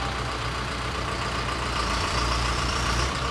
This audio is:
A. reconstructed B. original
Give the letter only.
A